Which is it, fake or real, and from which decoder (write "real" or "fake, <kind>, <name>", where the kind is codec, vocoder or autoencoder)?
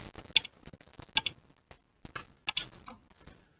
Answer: real